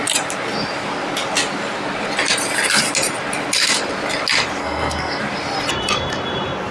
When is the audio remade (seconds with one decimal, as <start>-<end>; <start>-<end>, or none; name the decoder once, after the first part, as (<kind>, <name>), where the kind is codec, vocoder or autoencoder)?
4.6-5.2 (codec, SNAC)

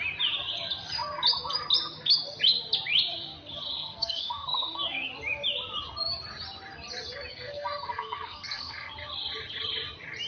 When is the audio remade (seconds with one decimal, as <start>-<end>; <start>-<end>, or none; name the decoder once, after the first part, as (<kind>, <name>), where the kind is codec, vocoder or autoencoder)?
3.7-5.1 (codec, SNAC); 7.3-8.9

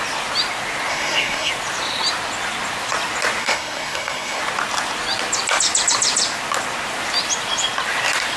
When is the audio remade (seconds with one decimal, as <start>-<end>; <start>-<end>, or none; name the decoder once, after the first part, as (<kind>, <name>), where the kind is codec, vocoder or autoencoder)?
0.9-1.5 (codec, SNAC); 3.4-4.4